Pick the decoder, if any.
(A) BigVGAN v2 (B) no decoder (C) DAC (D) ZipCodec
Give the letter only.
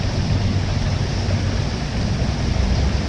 B